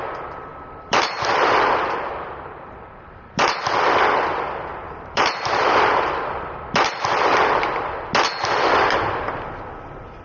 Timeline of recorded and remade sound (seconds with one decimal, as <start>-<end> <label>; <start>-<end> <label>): 0.0-0.5 recorded; 0.5-3.6 remade; 3.6-4.7 recorded; 4.7-6.4 remade; 6.4-10.2 recorded

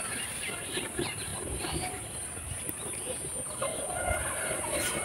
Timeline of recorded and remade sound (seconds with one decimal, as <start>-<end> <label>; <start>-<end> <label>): 0.0-5.0 recorded

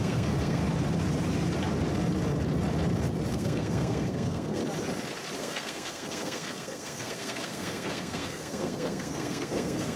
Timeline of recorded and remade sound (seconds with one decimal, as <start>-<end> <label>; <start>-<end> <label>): 0.0-0.6 remade; 0.6-3.3 recorded; 3.3-4.6 remade; 4.6-5.4 recorded; 5.4-10.0 remade

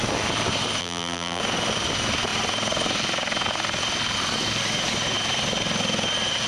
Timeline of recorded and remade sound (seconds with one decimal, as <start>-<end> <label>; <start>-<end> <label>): 0.0-0.8 recorded; 0.8-1.4 remade; 1.4-6.5 recorded

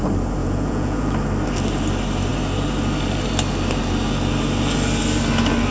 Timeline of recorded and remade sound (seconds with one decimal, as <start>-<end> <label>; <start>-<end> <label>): 0.0-0.4 recorded; 0.4-1.1 remade; 1.1-5.7 recorded

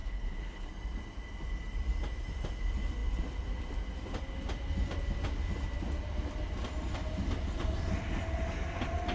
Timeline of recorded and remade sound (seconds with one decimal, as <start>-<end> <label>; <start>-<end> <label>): 0.0-0.7 remade; 0.7-9.1 recorded